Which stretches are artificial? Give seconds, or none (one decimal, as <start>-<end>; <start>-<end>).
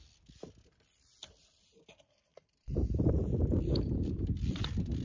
2.3-3.0